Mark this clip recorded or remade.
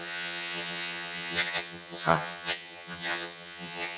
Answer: remade